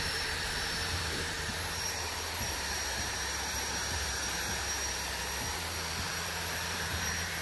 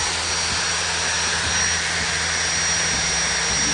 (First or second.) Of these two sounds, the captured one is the second